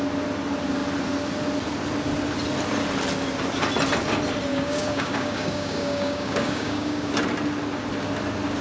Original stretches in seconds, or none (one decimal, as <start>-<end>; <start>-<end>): 0.0-4.5; 7.1-8.6